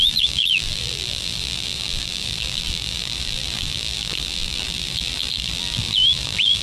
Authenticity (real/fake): fake